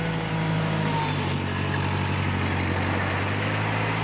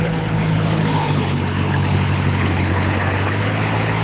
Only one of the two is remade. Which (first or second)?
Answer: second